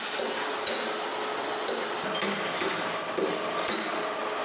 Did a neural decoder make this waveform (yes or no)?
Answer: no